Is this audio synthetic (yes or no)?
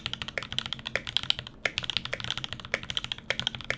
no